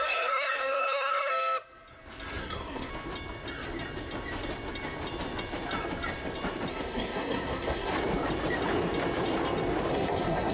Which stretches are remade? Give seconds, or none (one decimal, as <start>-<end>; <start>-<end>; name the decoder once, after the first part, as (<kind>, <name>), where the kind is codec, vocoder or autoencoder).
0.0-1.3 (codec, SNAC); 2.4-2.9; 6.7-7.9; 9.9-10.5